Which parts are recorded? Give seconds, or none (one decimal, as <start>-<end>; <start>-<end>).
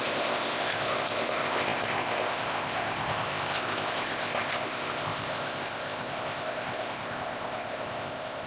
none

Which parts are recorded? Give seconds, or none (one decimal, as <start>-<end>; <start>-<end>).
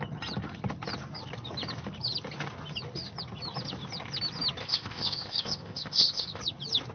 0.0-4.6; 6.4-6.9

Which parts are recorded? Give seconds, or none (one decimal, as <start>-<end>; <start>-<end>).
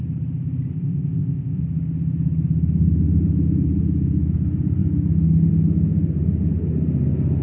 0.0-0.7; 1.6-7.4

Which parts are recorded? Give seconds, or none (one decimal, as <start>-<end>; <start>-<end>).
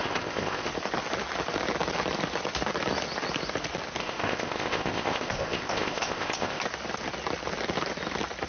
0.7-4.0; 6.6-8.5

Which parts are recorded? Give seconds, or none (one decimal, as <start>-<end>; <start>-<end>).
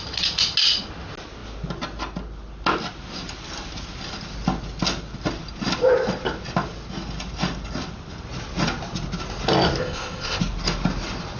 0.0-9.8; 10.4-11.4